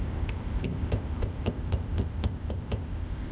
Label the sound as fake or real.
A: fake